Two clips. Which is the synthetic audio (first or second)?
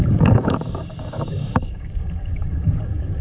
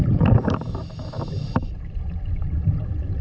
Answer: first